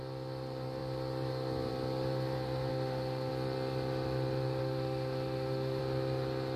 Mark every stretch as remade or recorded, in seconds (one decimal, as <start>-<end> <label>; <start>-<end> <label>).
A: 0.0-2.7 recorded; 2.7-3.3 remade; 3.3-4.6 recorded; 4.6-5.8 remade; 5.8-6.6 recorded